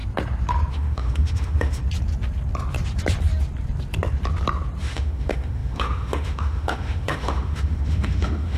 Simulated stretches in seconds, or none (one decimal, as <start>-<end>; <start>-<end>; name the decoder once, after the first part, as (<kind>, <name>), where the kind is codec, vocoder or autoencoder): 0.7-1.8 (autoencoder, DAC-VAE); 4.8-8.6